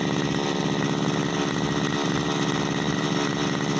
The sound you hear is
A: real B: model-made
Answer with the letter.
A